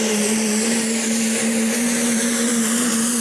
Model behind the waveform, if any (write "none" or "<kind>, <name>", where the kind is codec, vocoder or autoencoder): vocoder, BigVGAN v2